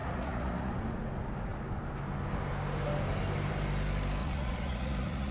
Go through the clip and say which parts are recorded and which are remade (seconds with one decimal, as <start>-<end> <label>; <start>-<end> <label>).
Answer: 0.0-0.7 remade; 0.7-4.2 recorded; 4.2-5.3 remade